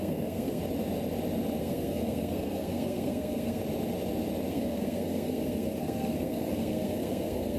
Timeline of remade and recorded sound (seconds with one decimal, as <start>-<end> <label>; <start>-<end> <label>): 0.0-0.6 remade; 0.6-1.6 recorded; 1.6-3.6 remade; 3.6-4.5 recorded; 4.5-7.6 remade

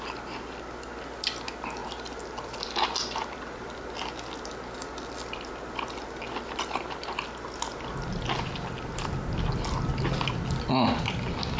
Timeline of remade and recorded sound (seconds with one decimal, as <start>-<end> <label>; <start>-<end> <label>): 0.0-1.8 recorded; 1.8-4.0 remade; 4.0-11.6 recorded

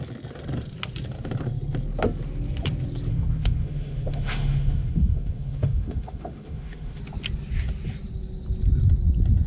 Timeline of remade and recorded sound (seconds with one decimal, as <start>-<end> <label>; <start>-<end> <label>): 0.0-3.1 recorded; 3.1-7.0 remade; 7.0-9.5 recorded

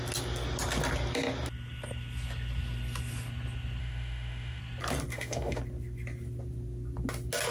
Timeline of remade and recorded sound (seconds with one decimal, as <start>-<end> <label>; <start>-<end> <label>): 0.0-3.8 recorded; 3.8-4.6 remade; 4.6-5.1 recorded; 5.1-5.6 remade; 5.6-7.5 recorded

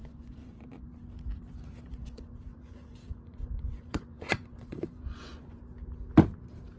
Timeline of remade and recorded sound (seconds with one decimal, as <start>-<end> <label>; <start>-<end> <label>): 0.0-0.9 remade; 0.9-1.9 recorded; 1.9-5.6 remade; 5.6-6.8 recorded

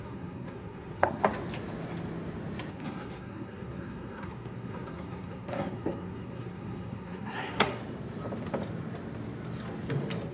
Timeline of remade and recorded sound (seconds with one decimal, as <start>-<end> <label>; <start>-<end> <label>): 0.0-1.2 remade; 1.2-2.7 recorded; 2.7-7.8 remade; 7.8-10.3 recorded

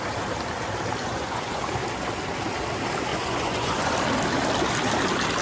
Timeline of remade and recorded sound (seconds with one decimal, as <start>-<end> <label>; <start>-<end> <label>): 0.0-1.0 recorded; 1.0-1.6 remade; 1.6-3.1 recorded; 3.1-3.9 remade; 3.9-5.4 recorded

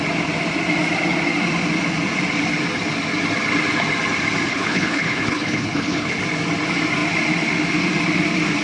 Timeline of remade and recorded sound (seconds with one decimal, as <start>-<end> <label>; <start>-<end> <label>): 0.0-4.5 recorded; 4.5-6.2 remade; 6.2-8.6 recorded